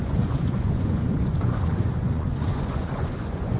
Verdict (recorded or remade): remade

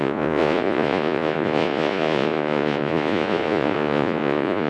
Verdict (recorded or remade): remade